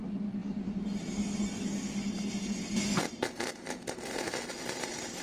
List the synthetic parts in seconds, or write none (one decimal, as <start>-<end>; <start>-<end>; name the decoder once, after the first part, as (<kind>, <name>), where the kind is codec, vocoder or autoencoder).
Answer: none